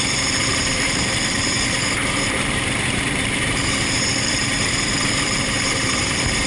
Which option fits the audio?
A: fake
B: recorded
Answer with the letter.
A